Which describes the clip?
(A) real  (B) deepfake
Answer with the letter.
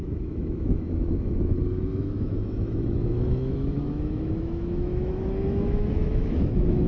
B